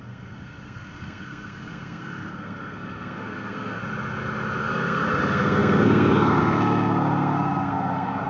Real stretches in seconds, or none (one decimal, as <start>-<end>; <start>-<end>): 3.8-4.6